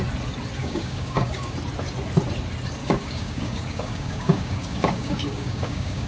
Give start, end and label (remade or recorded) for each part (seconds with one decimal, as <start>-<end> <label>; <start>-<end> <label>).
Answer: 0.0-0.6 recorded; 0.6-1.5 remade; 1.5-2.8 recorded; 2.8-6.1 remade